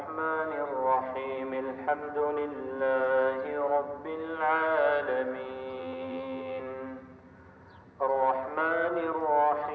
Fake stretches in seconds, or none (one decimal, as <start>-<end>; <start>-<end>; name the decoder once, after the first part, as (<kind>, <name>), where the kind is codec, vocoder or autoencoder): 5.8-6.6 (vocoder, BigVGAN v2)